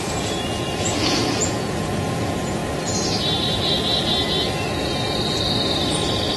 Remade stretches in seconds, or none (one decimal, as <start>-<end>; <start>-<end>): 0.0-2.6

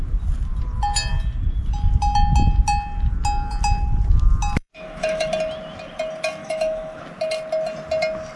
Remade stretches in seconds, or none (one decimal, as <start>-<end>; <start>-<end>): 4.6-5.3; 6.4-7.0

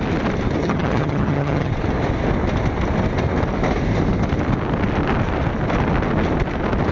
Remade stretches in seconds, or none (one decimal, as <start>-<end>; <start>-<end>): 0.6-1.7

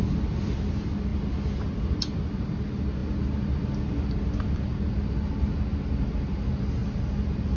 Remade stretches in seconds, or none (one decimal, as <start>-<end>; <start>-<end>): none